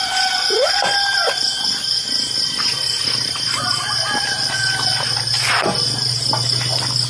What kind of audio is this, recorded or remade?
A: recorded